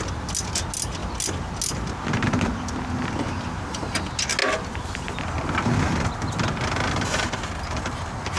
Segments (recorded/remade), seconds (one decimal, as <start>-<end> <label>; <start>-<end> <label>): 0.0-8.4 recorded